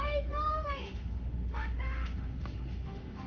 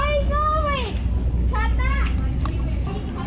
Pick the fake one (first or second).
first